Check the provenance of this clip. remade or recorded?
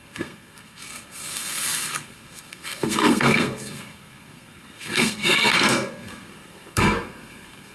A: remade